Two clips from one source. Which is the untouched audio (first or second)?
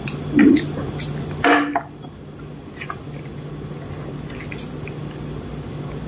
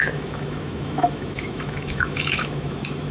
first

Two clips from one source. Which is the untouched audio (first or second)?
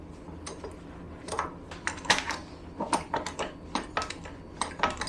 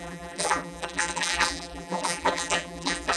first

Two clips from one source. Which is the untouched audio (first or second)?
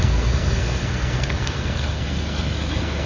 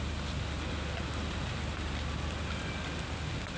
second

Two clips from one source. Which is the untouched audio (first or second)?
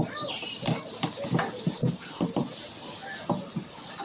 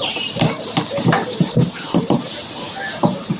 first